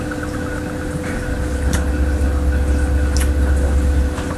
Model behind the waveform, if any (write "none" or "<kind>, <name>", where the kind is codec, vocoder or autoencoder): none